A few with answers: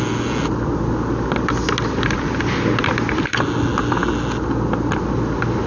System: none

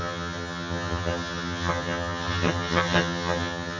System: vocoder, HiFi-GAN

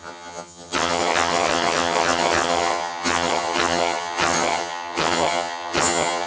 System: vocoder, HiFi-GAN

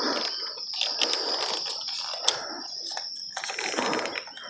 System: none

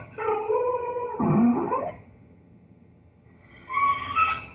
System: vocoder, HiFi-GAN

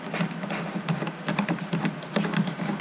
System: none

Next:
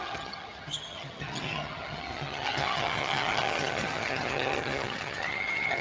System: vocoder, HiFi-GAN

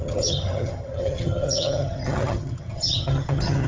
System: vocoder, HiFi-GAN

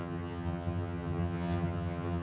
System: vocoder, HiFi-GAN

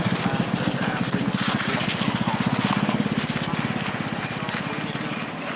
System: none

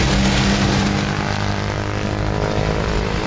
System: none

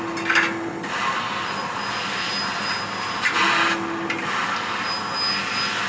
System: none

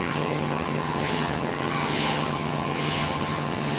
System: vocoder, HiFi-GAN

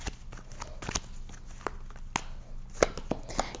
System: none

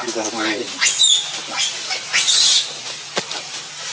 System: none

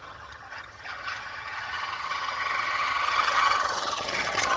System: vocoder, HiFi-GAN